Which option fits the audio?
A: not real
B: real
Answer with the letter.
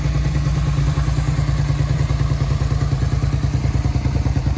B